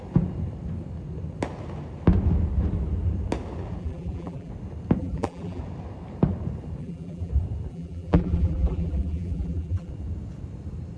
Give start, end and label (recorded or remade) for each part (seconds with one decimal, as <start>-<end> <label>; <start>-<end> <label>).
0.0-3.8 recorded; 3.8-4.5 remade; 4.5-5.0 recorded; 5.0-5.6 remade; 5.6-6.8 recorded; 6.8-7.3 remade; 7.3-7.7 recorded; 7.7-9.9 remade; 9.9-11.0 recorded